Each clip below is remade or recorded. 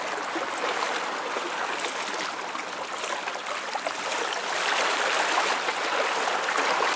recorded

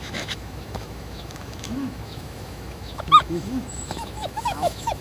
remade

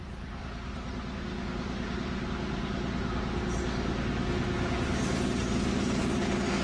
recorded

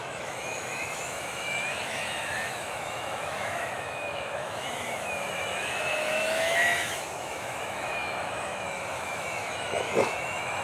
remade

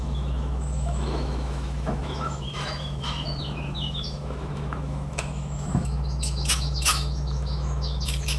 remade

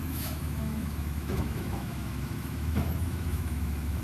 remade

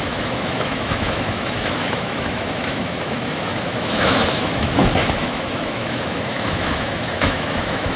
remade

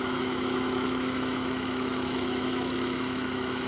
remade